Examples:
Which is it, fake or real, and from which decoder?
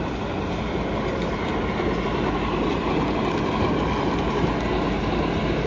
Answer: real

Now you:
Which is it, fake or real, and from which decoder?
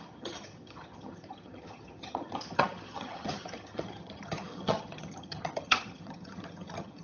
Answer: fake, vocoder, HiFi-GAN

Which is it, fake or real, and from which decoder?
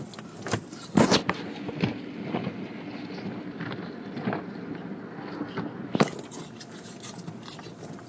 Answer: real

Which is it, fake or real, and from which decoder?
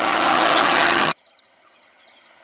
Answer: fake, vocoder, HiFi-GAN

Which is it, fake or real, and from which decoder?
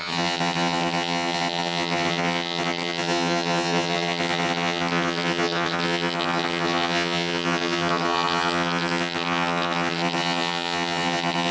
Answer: fake, vocoder, HiFi-GAN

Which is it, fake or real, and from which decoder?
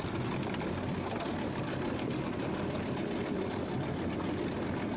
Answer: real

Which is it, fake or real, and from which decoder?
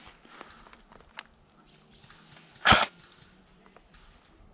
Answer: real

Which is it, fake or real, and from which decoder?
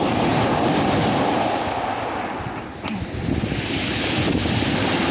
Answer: real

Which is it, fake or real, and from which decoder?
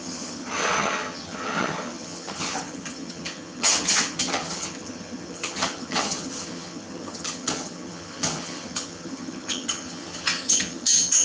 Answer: fake, vocoder, HiFi-GAN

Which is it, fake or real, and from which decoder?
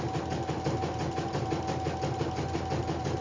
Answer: real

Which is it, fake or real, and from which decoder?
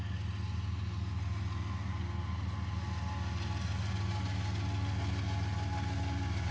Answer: real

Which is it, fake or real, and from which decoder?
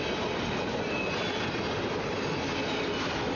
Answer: real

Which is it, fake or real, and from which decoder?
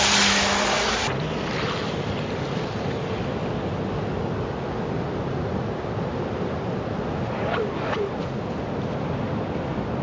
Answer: real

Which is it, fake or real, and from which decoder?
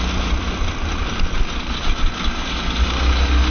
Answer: real